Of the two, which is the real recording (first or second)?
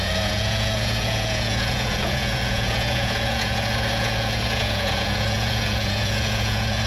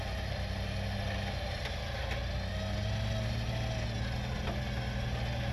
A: second